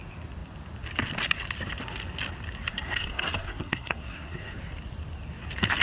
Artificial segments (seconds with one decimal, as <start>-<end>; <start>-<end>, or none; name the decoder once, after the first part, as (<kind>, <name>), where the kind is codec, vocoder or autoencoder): 2.7-4.6 (codec, SNAC)